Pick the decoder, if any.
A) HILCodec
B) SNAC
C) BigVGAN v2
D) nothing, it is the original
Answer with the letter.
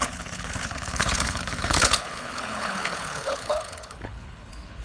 A